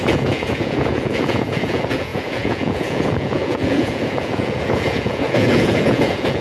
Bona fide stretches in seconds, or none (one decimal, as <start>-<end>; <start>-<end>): none